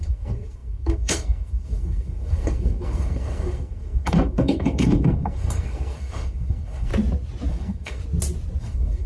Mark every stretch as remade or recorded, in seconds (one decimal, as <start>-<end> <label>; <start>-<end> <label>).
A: 0.0-6.9 remade; 6.9-7.5 recorded; 7.5-8.0 remade; 8.0-8.6 recorded; 8.6-9.1 remade